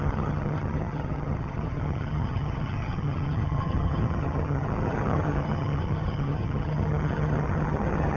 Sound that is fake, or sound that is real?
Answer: fake